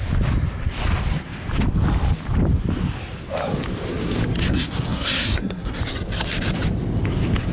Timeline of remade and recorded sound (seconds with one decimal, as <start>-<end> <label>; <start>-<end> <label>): 0.0-4.5 recorded; 4.5-5.8 remade; 5.8-7.5 recorded